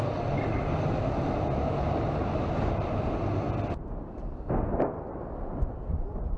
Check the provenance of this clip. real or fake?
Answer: real